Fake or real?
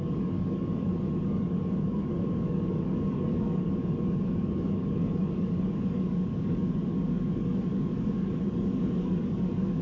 fake